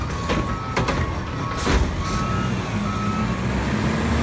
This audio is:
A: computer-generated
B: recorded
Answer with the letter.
B